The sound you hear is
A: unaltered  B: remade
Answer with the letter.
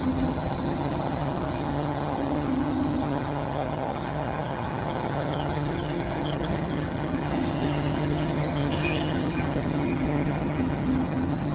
B